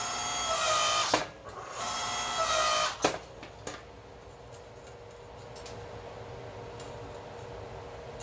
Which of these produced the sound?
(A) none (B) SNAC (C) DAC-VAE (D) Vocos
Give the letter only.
A